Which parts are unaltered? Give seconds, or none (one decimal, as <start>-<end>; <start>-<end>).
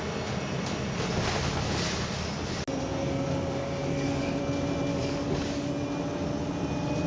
0.0-2.9; 4.4-4.9; 5.7-7.1